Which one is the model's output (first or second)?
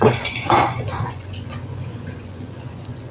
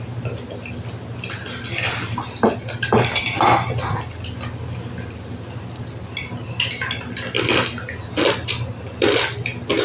first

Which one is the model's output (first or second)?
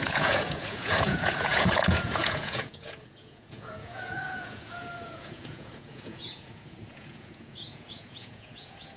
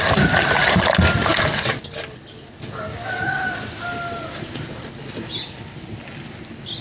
first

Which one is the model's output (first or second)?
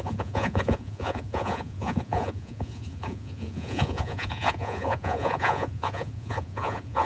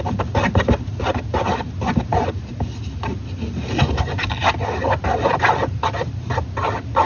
first